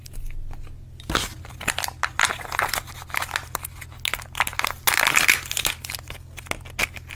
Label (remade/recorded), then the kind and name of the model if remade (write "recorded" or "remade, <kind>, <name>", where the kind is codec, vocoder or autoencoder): recorded